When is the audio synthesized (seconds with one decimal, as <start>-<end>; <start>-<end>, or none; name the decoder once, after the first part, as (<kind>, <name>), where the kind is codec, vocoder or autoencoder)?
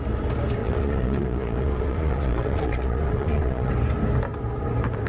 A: 0.6-3.7 (vocoder, Vocos)